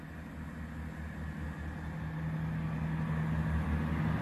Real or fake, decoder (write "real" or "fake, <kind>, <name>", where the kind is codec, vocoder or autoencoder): real